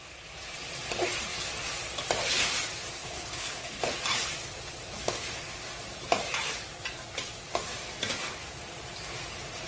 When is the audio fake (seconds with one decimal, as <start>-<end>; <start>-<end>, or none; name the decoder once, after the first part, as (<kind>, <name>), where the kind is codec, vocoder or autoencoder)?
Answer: 3.0-3.8 (codec, HILCodec)